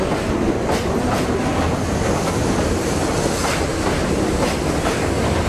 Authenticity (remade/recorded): recorded